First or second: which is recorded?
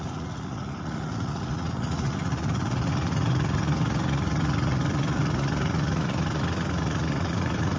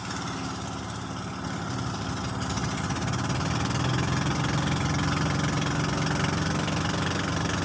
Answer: second